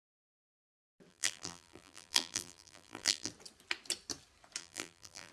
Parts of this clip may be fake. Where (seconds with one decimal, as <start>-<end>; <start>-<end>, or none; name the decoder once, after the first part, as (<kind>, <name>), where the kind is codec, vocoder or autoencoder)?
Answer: 1.1-3.3 (vocoder, BigVGAN v2); 4.6-5.3